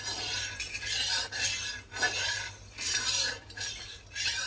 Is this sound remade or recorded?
remade